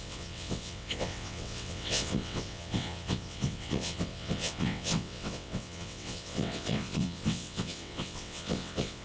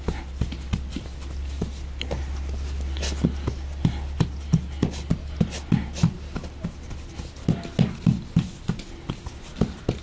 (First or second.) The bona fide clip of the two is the second